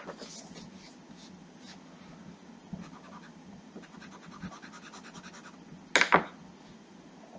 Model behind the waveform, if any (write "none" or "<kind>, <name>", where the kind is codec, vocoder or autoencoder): none